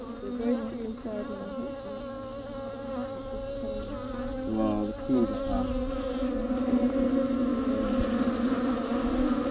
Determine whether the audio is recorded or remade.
recorded